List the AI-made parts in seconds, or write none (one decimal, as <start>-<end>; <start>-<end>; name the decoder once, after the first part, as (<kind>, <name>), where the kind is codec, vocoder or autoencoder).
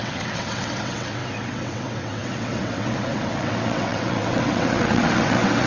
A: 0.0-5.7 (vocoder, WaveNeXt)